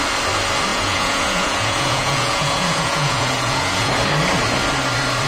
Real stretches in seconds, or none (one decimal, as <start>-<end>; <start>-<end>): 0.0-0.7; 3.9-5.3